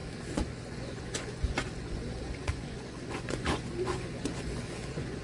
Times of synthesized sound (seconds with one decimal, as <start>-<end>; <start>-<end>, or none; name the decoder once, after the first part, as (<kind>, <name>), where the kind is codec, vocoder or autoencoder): 0.0-5.2 (vocoder, Vocos)